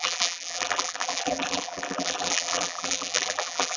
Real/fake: fake